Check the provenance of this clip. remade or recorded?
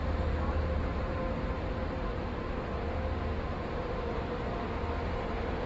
recorded